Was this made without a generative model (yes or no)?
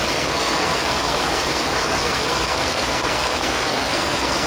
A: no